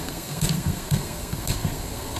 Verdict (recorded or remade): remade